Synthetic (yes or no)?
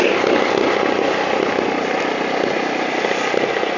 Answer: no